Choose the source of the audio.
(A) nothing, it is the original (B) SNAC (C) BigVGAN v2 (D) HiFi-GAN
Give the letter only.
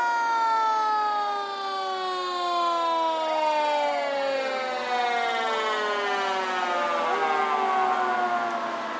A